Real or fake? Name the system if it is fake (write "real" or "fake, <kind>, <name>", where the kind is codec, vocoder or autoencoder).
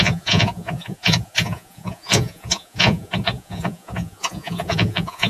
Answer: fake, vocoder, Vocos